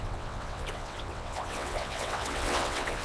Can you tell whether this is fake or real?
fake